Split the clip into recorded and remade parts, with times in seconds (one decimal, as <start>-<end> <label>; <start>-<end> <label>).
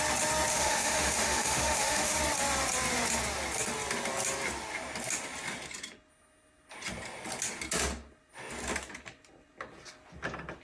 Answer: 0.0-0.5 recorded; 0.5-2.2 remade; 2.2-10.6 recorded